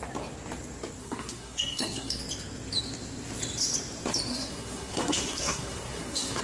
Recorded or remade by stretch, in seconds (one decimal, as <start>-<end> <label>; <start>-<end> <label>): 0.0-1.0 recorded; 1.0-2.2 remade; 2.2-4.3 recorded; 4.3-6.4 remade